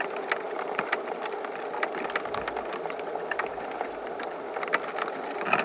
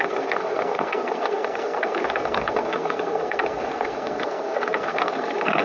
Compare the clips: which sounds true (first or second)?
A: first